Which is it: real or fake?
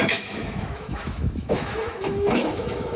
fake